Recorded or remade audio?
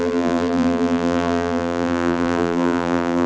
remade